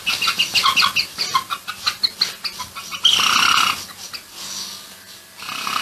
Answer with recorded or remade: recorded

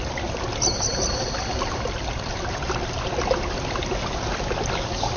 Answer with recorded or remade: recorded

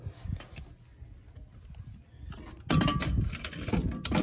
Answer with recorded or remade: recorded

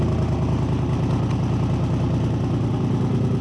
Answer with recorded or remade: recorded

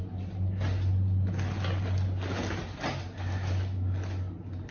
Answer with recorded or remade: recorded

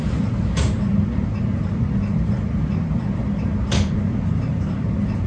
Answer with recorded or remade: recorded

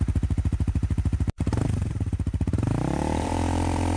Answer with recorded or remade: remade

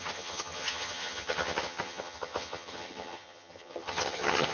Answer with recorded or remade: remade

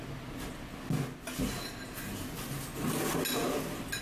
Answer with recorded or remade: recorded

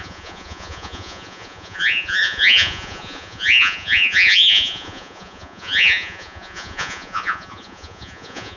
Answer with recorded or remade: remade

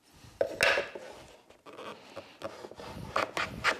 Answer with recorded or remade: recorded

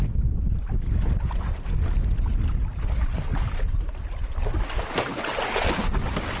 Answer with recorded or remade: recorded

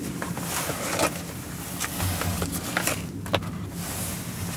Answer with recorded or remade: recorded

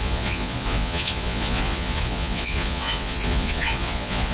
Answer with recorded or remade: remade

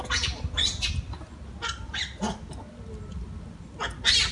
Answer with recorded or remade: recorded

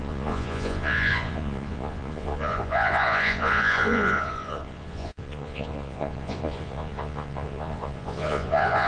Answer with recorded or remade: remade